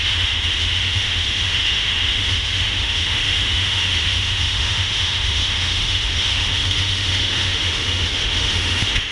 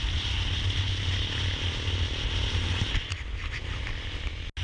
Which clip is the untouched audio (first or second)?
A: second